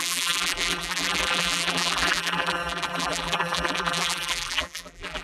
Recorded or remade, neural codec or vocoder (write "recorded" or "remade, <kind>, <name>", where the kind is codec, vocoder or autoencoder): remade, vocoder, BigVGAN v2